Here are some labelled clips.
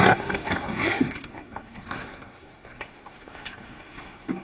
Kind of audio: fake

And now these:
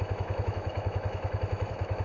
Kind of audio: fake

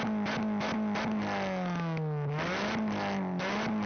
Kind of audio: real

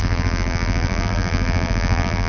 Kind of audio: fake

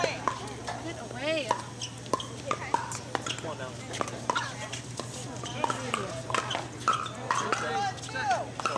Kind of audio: real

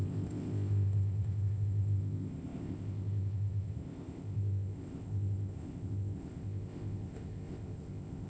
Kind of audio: fake